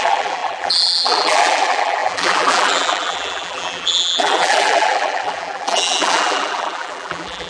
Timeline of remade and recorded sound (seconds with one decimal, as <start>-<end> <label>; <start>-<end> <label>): 0.0-7.5 remade

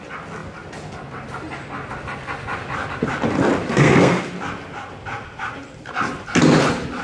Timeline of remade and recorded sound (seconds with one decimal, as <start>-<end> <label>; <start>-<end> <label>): 0.0-3.7 recorded; 3.7-4.3 remade; 4.3-7.0 recorded